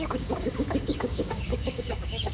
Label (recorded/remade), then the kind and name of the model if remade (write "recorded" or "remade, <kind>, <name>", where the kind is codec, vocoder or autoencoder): remade, codec, DAC